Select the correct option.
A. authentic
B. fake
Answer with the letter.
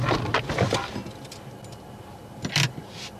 A